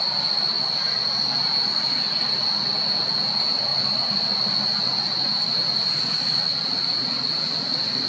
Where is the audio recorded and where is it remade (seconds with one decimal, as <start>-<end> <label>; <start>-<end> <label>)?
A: 0.0-8.1 recorded